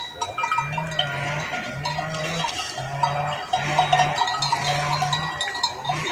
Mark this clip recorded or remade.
recorded